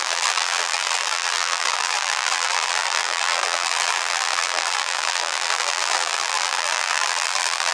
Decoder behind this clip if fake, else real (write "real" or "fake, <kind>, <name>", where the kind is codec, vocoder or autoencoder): fake, vocoder, BigVGAN v2